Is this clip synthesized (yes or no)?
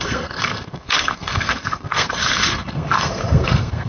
yes